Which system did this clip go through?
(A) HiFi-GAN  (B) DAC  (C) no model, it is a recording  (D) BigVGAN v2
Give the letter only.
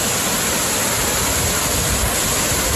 C